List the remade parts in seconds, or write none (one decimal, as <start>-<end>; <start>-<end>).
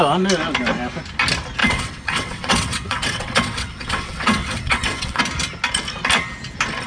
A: 1.6-5.2